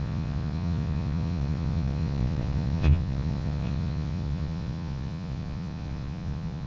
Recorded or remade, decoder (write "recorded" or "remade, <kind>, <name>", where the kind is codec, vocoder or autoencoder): remade, vocoder, Vocos